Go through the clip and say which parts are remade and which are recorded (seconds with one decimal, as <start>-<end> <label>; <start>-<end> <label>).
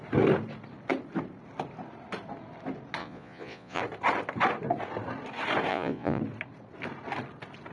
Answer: 0.0-3.0 recorded; 3.0-3.8 remade; 3.8-5.7 recorded; 5.7-6.2 remade; 6.2-7.7 recorded